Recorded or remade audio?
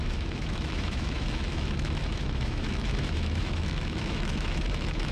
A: remade